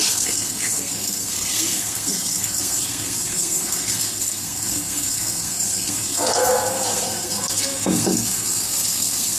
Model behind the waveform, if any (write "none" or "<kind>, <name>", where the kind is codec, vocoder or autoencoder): codec, SNAC